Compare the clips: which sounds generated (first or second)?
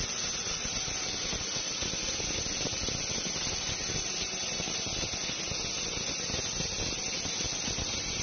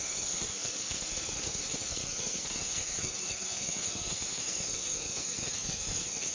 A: second